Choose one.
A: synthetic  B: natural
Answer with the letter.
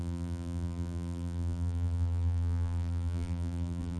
A